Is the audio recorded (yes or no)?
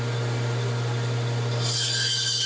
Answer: yes